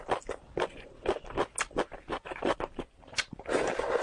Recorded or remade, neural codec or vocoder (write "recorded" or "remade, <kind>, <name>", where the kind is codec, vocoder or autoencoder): recorded